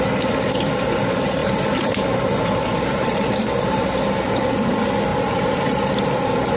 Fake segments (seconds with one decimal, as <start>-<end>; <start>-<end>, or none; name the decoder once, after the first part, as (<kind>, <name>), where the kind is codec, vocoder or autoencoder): 1.4-4.0 (vocoder, BigVGAN v2); 5.1-5.9